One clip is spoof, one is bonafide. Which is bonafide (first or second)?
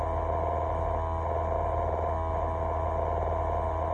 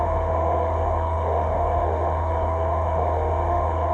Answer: first